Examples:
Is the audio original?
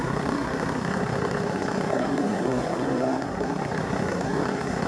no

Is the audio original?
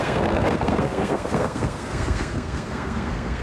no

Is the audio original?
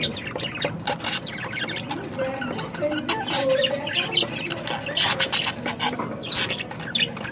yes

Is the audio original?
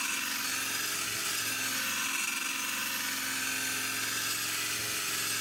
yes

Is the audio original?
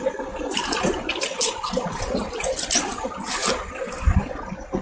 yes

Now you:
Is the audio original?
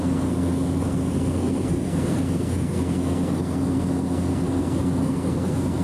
no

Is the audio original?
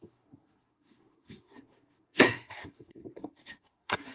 no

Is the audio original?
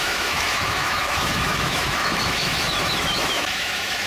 no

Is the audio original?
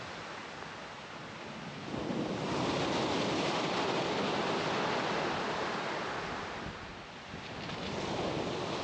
yes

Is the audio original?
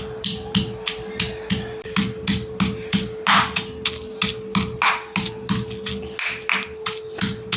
yes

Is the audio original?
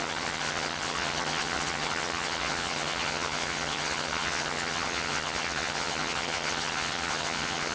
no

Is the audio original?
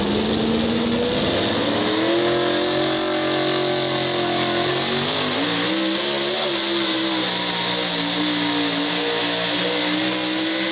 yes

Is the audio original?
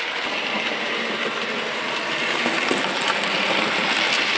yes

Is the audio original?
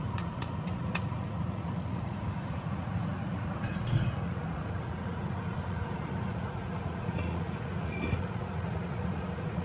no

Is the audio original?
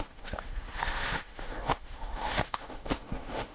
no